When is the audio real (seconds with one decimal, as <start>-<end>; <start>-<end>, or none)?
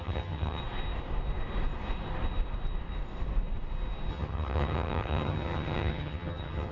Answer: 0.6-4.1